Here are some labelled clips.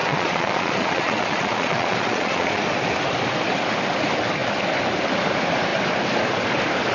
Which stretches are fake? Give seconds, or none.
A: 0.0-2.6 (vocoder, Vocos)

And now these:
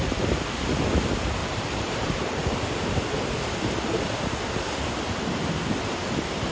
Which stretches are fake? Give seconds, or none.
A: 1.4-2.7 (vocoder, BigVGAN v2)

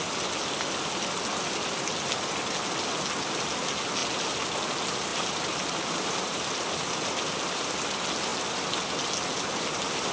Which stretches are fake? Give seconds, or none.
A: 4.0-4.6 (vocoder, BigVGAN v2); 5.1-7.7

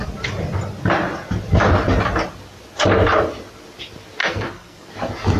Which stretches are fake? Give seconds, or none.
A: 4.2-4.9 (codec, SNAC)

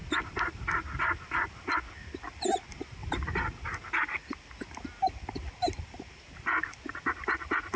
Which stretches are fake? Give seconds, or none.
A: none

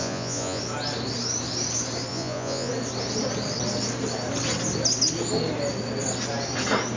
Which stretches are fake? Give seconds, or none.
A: 0.0-0.6 (vocoder, Vocos); 2.1-2.7

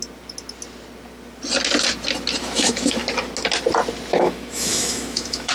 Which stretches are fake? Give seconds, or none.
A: 2.4-3.0 (autoencoder, DAC-VAE); 4.1-5.5

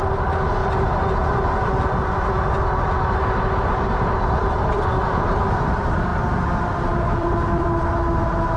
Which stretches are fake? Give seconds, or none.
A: 6.1-7.6 (vocoder, BigVGAN v2)